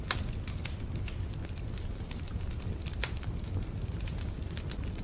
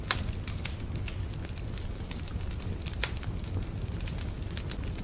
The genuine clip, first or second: second